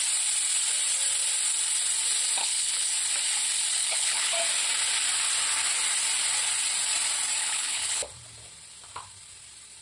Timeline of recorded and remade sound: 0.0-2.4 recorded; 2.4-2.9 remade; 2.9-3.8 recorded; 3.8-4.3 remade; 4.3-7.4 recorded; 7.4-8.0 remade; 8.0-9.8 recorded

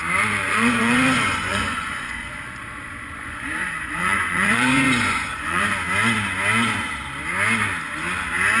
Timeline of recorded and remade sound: 0.0-0.4 recorded; 0.4-5.6 remade; 5.6-8.6 recorded

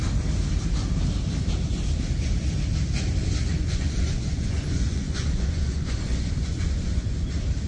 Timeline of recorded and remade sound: 0.0-3.5 recorded; 3.5-7.3 remade; 7.3-7.7 recorded

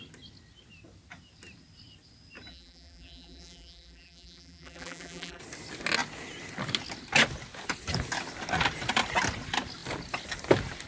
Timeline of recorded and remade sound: 0.0-2.5 recorded; 2.5-5.4 remade; 5.4-10.9 recorded

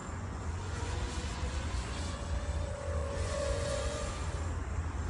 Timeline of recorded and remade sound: 0.0-2.2 remade; 2.2-3.0 recorded; 3.0-4.1 remade; 4.1-5.1 recorded